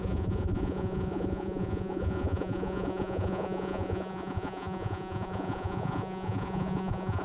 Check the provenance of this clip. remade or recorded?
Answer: remade